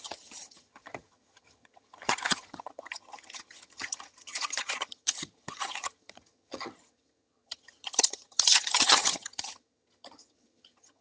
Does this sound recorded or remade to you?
remade